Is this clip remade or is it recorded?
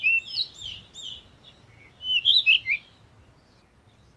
recorded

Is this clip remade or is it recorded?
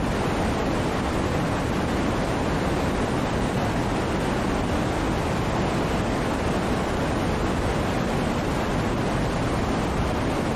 recorded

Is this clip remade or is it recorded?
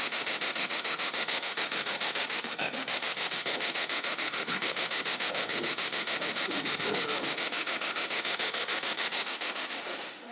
remade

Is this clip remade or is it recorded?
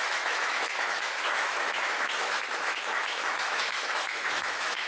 remade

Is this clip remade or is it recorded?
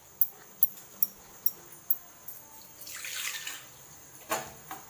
recorded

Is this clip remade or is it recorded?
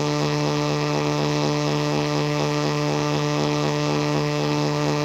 remade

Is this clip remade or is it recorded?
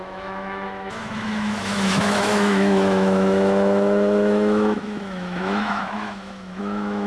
remade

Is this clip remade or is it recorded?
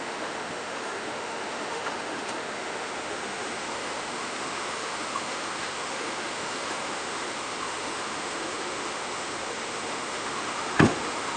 remade